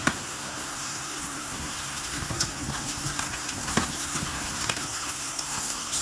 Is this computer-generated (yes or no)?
yes